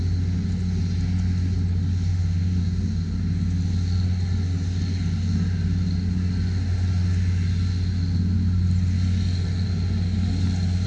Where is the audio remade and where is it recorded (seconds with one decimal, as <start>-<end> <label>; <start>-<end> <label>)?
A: 0.0-2.1 recorded; 2.1-2.6 remade; 2.6-10.9 recorded